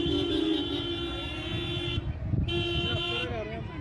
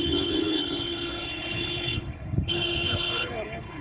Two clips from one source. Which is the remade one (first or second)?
second